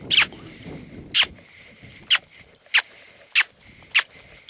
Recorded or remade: recorded